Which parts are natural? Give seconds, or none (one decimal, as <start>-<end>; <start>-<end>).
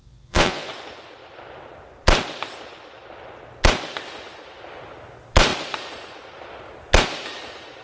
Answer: 0.7-7.8